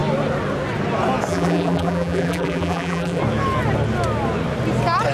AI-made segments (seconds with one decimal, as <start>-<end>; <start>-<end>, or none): 1.3-3.2